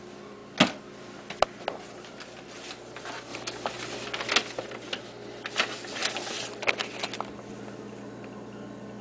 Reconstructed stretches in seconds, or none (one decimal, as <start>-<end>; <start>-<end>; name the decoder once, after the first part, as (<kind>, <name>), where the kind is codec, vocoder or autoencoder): none